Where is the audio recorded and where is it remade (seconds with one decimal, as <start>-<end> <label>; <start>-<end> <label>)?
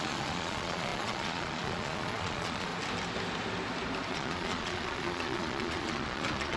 0.0-2.7 remade; 2.7-4.1 recorded; 4.1-6.6 remade